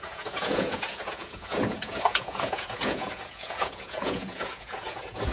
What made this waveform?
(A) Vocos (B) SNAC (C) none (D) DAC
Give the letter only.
A